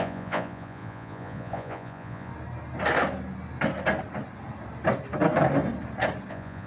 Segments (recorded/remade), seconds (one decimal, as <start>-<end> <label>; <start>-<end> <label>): 0.0-2.3 remade; 2.3-6.3 recorded; 6.3-6.7 remade